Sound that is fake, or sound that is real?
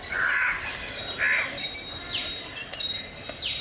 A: real